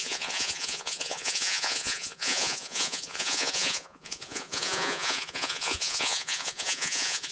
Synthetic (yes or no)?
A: yes